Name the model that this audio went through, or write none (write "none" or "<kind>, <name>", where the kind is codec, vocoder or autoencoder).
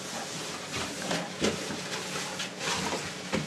none